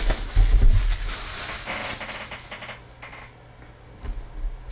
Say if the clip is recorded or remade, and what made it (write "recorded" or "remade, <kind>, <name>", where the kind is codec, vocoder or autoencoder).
recorded